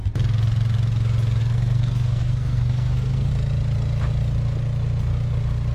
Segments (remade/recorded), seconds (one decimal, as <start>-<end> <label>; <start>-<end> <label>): 0.0-1.4 recorded; 1.4-3.3 remade; 3.3-5.7 recorded